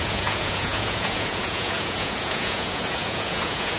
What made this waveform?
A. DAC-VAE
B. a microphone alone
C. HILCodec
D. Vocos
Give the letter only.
D